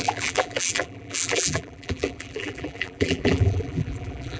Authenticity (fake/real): fake